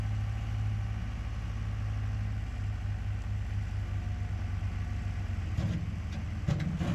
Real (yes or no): yes